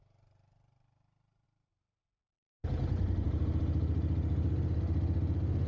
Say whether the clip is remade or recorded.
recorded